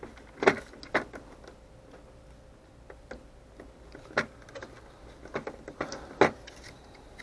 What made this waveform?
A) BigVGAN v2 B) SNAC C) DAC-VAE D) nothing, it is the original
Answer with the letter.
D